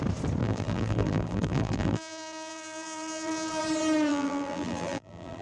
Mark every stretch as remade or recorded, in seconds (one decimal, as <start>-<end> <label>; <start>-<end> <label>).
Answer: 0.0-0.4 recorded; 0.4-3.6 remade; 3.6-4.1 recorded; 4.1-5.4 remade